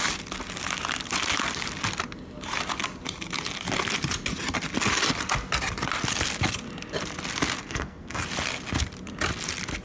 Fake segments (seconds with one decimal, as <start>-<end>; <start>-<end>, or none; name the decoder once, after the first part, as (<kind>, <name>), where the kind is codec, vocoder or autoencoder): 7.6-8.2 (codec, SNAC)